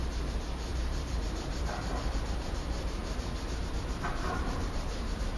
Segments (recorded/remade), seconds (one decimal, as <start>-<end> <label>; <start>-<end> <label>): 0.0-3.0 remade; 3.0-3.6 recorded; 3.6-5.4 remade